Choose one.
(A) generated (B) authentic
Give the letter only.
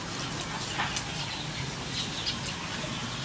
B